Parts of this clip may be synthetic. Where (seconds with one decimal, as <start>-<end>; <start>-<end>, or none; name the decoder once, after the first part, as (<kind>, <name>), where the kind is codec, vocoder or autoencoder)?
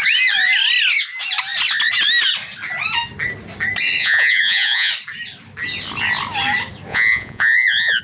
4.0-4.9 (vocoder, Vocos); 6.9-8.0